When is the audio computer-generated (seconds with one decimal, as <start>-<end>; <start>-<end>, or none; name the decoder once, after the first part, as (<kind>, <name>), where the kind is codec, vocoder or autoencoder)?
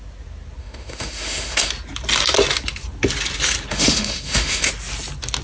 0.6-1.7 (autoencoder, DAC-VAE); 3.7-4.7